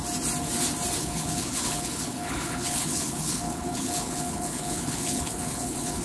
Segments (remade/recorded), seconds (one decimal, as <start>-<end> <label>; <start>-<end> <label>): 0.0-1.0 recorded; 1.0-6.0 remade